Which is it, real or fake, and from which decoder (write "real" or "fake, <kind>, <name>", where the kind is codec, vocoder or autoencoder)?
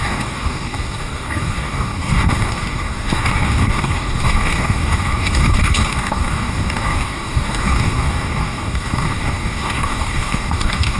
fake, codec, DAC